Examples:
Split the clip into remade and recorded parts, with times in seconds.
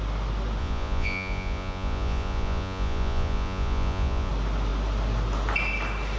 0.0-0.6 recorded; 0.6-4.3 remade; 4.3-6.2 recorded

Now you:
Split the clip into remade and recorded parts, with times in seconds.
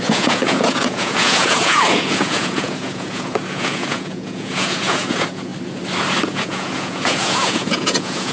0.0-5.5 remade; 5.5-6.3 recorded; 6.3-8.3 remade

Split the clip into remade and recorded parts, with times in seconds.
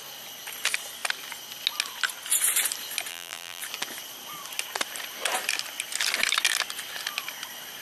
0.0-3.1 recorded; 3.1-3.6 remade; 3.6-7.8 recorded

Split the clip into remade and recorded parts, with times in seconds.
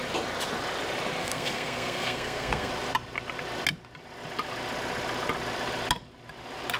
0.0-1.2 recorded; 1.2-2.7 remade; 2.7-6.8 recorded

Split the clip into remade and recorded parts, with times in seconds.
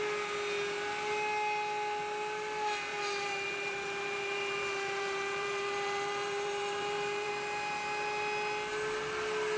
0.0-2.9 recorded; 2.9-7.3 remade; 7.3-9.6 recorded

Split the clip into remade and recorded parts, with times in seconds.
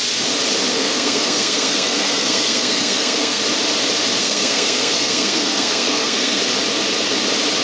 0.0-0.7 recorded; 0.7-3.4 remade; 3.4-4.2 recorded; 4.2-6.4 remade; 6.4-7.6 recorded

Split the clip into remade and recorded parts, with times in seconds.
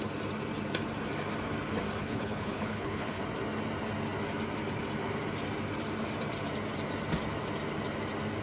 0.0-2.0 recorded; 2.0-3.2 remade; 3.2-8.4 recorded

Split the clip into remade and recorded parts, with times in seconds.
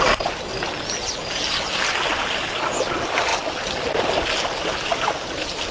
0.0-5.7 recorded